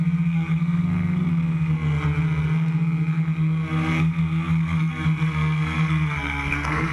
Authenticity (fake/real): fake